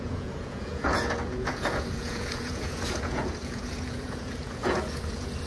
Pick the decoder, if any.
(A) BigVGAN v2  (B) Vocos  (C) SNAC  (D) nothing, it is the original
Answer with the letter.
B